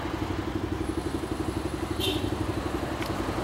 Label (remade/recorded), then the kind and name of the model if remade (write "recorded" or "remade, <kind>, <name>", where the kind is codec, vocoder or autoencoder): recorded